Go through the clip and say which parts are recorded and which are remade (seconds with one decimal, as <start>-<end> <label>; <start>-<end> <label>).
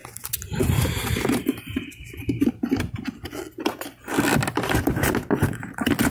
0.0-6.1 recorded